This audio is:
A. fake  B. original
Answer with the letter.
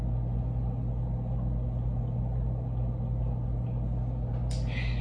B